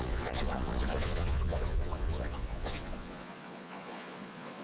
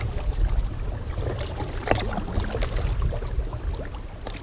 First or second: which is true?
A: second